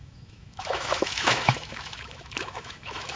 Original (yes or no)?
no